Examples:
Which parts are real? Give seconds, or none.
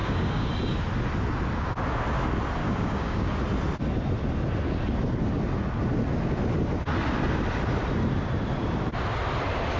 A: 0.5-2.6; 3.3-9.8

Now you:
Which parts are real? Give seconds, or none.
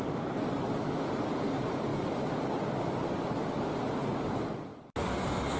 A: 4.7-5.6